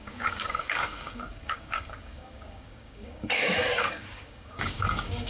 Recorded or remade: remade